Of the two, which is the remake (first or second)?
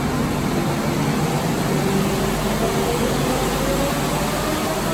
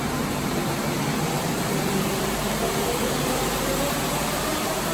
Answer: second